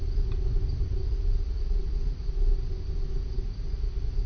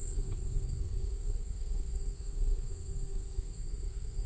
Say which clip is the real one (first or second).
first